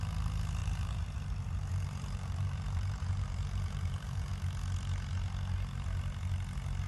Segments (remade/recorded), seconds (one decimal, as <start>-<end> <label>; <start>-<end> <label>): 0.0-0.6 recorded; 0.6-4.3 remade; 4.3-6.9 recorded